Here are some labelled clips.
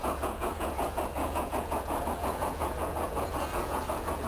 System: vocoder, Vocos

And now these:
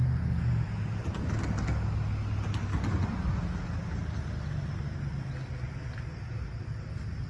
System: none